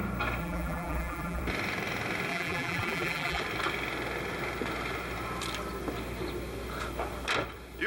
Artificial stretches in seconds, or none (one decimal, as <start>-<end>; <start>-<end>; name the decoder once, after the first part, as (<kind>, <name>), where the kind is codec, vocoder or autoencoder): 0.4-1.4 (vocoder, BigVGAN v2); 2.3-3.4

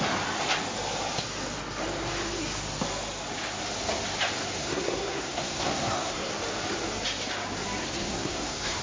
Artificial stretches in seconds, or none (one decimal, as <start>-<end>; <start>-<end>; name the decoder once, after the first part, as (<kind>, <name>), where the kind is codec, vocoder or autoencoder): 4.6-6.3 (codec, SNAC); 7.8-8.8

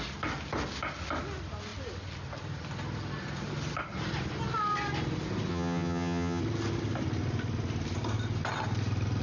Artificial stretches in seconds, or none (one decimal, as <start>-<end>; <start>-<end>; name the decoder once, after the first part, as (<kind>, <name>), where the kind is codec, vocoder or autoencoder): 5.5-6.4 (vocoder, HiFi-GAN)

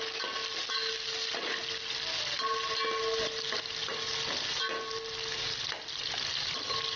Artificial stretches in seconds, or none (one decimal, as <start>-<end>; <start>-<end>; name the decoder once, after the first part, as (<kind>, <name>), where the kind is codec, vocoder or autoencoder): none

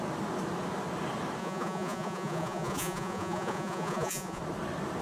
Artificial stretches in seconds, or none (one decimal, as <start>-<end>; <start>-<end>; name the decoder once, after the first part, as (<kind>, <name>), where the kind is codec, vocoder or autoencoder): 1.4-4.4 (vocoder, Vocos)

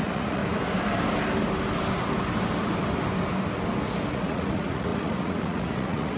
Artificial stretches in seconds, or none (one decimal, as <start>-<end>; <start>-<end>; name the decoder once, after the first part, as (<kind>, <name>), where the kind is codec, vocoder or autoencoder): 0.0-0.4 (vocoder, Vocos); 4.1-6.2